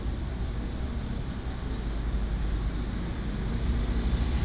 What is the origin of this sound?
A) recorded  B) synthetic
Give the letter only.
A